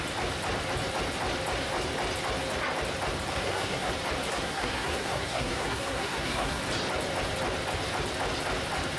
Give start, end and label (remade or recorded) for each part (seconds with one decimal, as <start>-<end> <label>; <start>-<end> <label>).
0.0-3.3 recorded; 3.3-3.9 remade; 3.9-4.3 recorded; 4.3-6.6 remade; 6.6-9.0 recorded